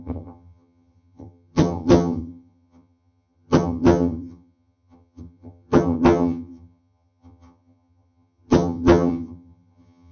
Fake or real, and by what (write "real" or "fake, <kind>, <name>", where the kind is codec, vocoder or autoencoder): fake, vocoder, HiFi-GAN